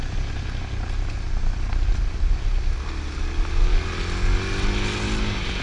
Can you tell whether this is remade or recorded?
recorded